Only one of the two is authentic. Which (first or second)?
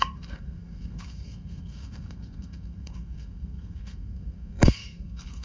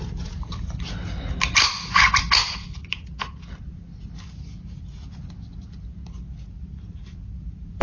second